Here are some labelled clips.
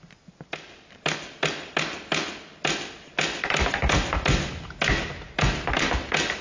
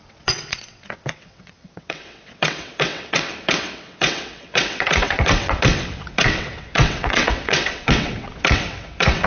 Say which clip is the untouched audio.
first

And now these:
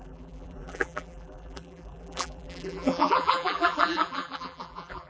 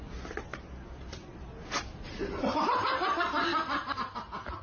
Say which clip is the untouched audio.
second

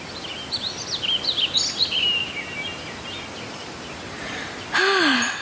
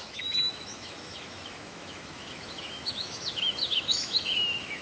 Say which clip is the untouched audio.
first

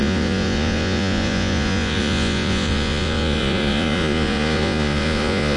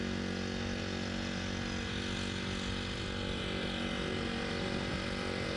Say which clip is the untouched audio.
second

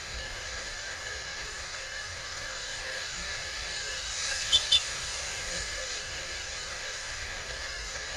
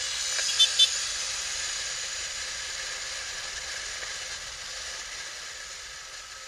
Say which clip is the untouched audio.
second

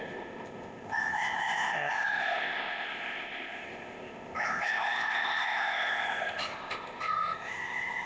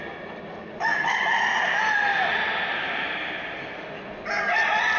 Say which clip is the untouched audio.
second